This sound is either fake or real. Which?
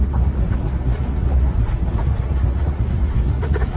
fake